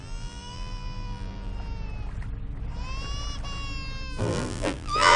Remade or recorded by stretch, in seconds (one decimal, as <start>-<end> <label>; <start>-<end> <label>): 0.0-1.5 remade; 1.5-4.2 recorded; 4.2-5.2 remade

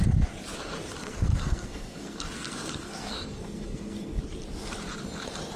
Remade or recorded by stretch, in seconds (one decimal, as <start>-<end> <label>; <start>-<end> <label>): 0.0-1.0 recorded; 1.0-4.2 remade; 4.2-5.6 recorded